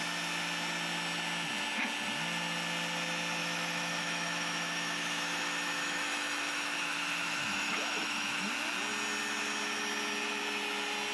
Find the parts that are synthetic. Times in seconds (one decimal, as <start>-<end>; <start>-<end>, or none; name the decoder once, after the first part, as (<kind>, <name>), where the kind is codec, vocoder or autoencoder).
3.4-8.5 (autoencoder, DAC-VAE)